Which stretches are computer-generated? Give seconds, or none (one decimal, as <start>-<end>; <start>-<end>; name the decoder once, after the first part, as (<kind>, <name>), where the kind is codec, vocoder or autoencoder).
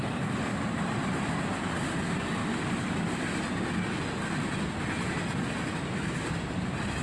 2.4-3.2 (vocoder, BigVGAN v2)